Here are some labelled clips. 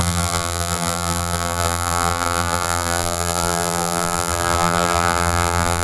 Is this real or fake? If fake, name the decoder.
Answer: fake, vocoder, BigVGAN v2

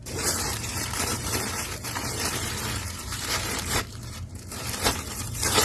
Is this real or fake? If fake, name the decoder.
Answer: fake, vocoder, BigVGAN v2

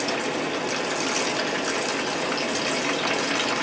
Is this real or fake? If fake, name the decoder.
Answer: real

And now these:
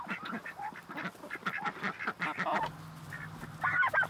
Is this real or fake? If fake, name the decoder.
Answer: real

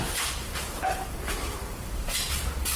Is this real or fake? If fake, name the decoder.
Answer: fake, vocoder, BigVGAN v2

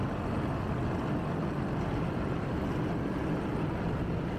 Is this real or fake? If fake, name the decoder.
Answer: real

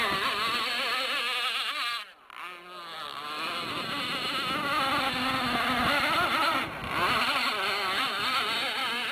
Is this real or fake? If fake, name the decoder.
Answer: real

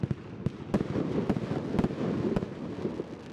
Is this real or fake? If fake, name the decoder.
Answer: real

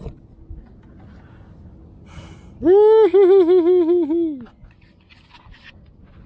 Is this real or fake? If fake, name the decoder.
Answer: real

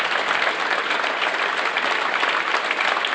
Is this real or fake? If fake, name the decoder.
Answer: real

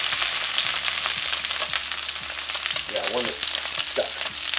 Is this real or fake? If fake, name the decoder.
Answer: real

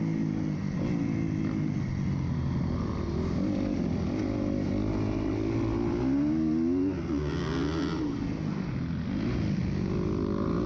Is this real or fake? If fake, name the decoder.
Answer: real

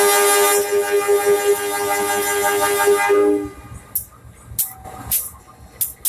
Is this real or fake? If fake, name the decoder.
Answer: real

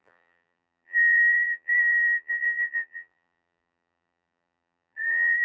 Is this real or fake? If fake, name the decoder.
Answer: fake, vocoder, BigVGAN v2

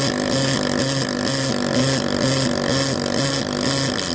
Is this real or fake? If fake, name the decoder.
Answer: real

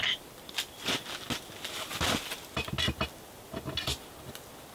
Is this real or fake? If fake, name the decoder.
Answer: real